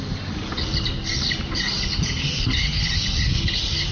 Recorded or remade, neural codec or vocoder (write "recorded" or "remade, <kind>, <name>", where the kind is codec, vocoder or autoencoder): recorded